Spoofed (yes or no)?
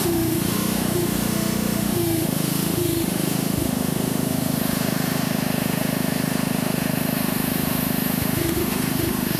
yes